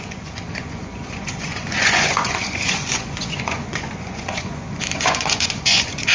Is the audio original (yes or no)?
no